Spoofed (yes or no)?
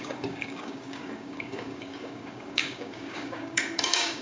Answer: yes